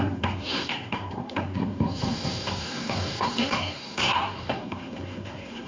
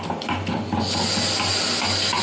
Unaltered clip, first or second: second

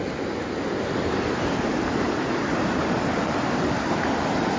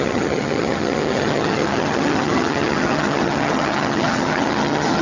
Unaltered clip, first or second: first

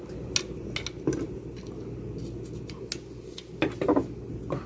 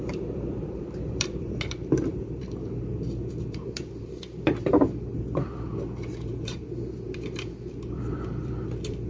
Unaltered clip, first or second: first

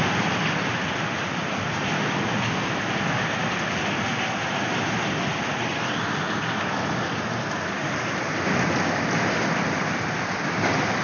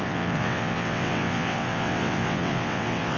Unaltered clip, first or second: first